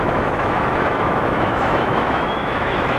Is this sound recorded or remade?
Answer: remade